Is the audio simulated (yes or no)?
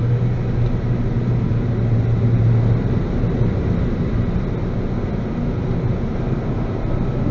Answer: no